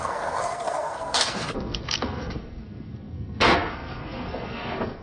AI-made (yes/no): yes